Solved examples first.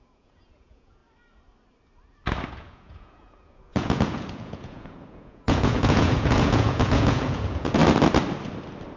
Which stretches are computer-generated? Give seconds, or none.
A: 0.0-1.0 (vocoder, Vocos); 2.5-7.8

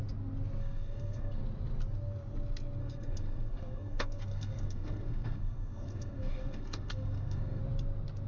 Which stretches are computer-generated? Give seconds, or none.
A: 0.6-1.4 (codec, SNAC); 2.8-7.6

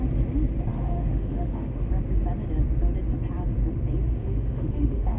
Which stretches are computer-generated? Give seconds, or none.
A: 0.7-1.9 (autoencoder, DAC-VAE); 4.2-5.2

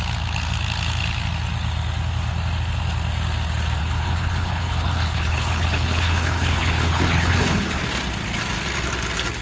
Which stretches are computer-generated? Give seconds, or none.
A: 3.8-7.8 (codec, HILCodec)

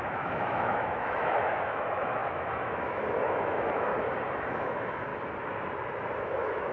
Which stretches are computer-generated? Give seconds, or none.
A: 0.0-3.9 (autoencoder, DAC-VAE); 4.5-5.1; 6.2-6.7

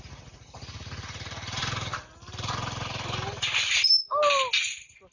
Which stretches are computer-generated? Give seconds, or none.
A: none

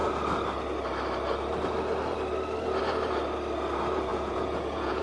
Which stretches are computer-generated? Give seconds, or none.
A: 4.1-5.0 (vocoder, Vocos)

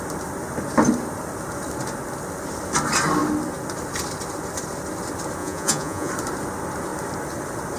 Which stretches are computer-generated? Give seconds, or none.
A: 5.4-6.1 (vocoder, Vocos)